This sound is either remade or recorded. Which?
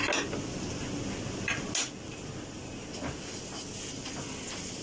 recorded